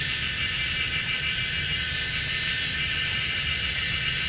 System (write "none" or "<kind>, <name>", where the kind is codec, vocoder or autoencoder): none